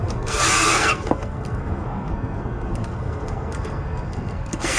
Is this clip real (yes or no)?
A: no